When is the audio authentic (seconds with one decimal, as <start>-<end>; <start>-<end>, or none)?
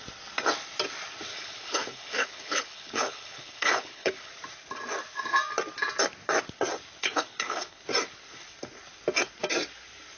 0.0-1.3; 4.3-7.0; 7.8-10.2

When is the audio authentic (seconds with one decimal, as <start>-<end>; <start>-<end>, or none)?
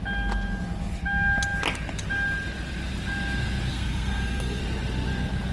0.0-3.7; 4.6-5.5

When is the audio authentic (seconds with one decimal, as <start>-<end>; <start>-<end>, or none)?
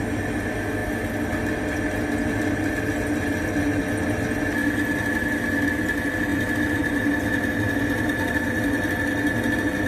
0.0-6.3; 8.6-9.9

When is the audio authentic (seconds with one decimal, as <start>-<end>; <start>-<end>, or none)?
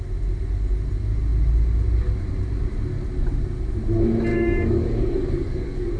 0.0-4.3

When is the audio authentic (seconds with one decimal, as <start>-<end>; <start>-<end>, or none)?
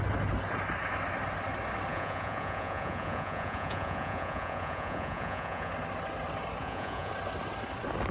0.0-1.9; 5.7-6.6; 7.1-8.1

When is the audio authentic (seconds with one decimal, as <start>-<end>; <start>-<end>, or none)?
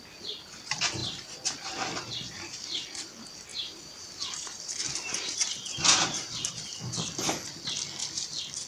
0.0-3.5; 6.5-8.7